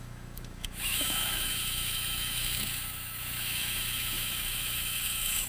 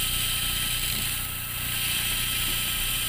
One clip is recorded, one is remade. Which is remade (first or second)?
first